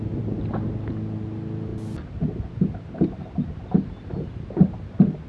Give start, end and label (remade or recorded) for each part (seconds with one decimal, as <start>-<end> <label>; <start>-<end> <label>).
0.0-5.3 recorded